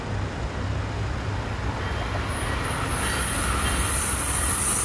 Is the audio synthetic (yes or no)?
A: no